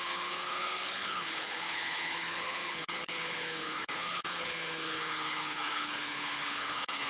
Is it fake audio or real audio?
fake